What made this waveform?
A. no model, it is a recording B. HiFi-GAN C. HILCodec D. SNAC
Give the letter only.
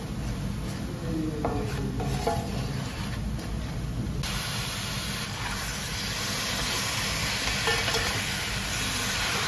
A